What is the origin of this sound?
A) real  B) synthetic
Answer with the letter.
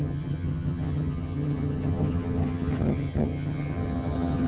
B